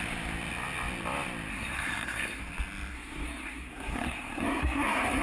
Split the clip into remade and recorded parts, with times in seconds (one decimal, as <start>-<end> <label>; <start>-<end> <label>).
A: 0.0-1.5 recorded; 1.5-2.4 remade; 2.4-2.9 recorded; 2.9-5.2 remade